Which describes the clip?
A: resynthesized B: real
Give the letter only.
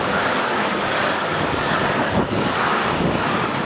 A